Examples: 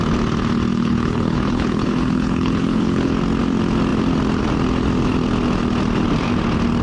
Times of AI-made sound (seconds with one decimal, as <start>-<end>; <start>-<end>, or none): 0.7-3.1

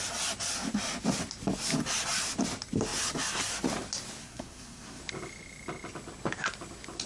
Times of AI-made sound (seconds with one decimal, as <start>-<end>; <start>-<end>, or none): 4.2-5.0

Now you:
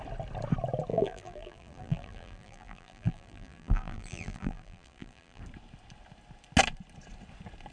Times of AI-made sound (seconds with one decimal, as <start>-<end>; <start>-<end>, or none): 0.9-5.4